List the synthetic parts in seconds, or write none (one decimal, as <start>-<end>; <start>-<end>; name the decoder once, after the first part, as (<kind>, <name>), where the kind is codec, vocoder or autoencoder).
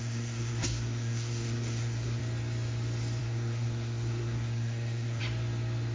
0.0-2.2 (codec, SNAC); 3.2-5.2